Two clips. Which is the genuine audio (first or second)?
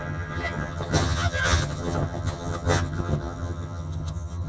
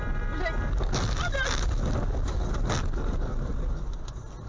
second